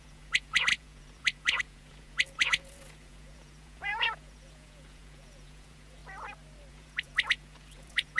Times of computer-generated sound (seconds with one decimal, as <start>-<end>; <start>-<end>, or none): 0.0-6.0; 6.7-8.2